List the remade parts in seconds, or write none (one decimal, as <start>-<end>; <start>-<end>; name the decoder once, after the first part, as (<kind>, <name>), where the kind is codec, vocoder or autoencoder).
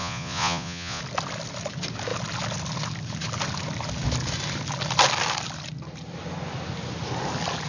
0.0-1.0 (vocoder, Vocos)